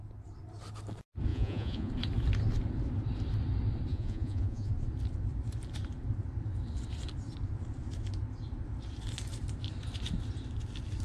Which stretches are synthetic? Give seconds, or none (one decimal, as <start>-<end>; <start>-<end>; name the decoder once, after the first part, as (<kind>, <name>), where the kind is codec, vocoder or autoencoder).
1.3-1.9 (vocoder, Vocos); 3.9-4.7